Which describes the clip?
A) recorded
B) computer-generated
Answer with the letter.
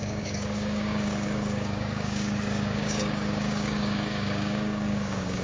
B